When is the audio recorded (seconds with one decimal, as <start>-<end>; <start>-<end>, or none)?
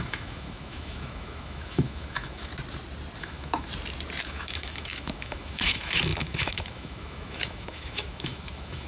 2.5-3.2; 3.7-4.2